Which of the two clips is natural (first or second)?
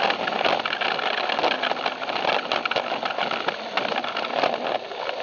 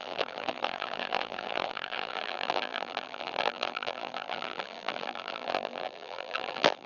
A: first